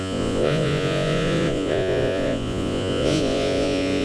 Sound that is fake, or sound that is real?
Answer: fake